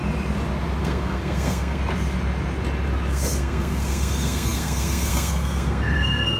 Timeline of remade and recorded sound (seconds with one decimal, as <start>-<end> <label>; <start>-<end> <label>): 0.0-0.8 recorded; 0.8-1.8 remade; 1.8-3.1 recorded; 3.1-6.4 remade